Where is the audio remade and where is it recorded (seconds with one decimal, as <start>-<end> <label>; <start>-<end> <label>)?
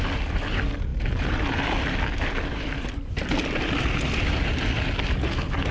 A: 0.0-5.7 recorded